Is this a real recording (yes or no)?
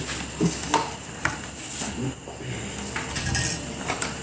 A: yes